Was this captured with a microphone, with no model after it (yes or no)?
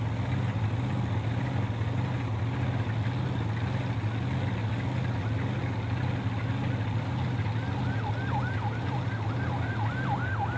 yes